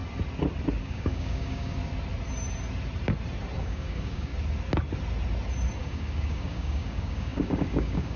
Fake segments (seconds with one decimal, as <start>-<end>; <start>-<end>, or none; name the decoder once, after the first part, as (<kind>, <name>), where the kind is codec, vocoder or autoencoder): 0.8-1.8 (codec, DAC); 3.6-4.3; 5.8-8.2